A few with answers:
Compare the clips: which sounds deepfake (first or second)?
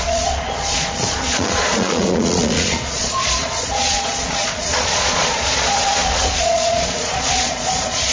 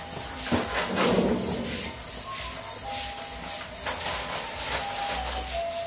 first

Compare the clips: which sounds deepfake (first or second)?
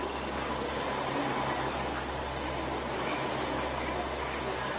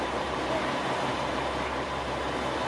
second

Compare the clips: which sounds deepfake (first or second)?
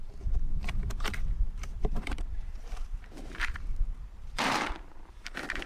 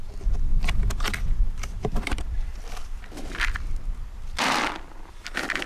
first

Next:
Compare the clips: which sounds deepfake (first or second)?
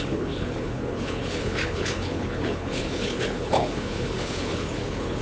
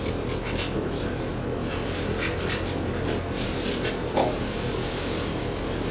first